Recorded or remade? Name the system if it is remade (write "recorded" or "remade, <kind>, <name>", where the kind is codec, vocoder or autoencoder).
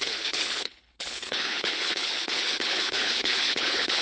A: remade, codec, HILCodec